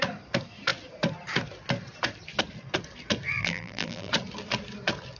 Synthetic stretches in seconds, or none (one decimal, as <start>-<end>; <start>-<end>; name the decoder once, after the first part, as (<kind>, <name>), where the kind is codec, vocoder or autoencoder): 3.4-4.1 (vocoder, BigVGAN v2)